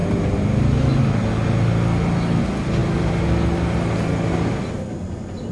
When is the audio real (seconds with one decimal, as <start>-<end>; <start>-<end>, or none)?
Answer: 0.0-5.5